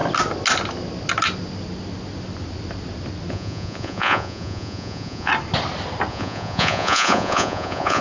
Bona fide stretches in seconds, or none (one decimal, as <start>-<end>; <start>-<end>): 0.0-3.3; 5.3-6.1